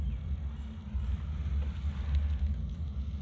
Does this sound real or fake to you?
real